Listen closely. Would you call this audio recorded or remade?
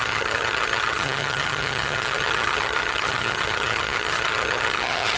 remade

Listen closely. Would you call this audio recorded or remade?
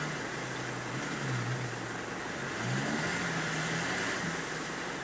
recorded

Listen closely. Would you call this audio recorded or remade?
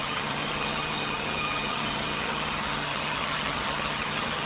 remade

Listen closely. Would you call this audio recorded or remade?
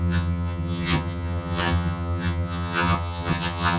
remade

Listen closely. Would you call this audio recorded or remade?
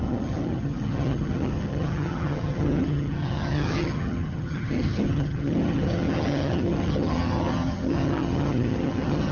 remade